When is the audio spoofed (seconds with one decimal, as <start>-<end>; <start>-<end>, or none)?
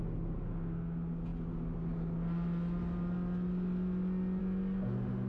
none